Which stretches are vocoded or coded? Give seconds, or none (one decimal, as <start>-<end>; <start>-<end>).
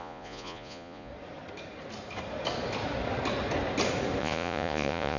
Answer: 0.0-1.1; 4.2-5.2